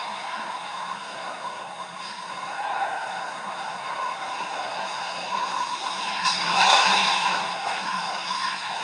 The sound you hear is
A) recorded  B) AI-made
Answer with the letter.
B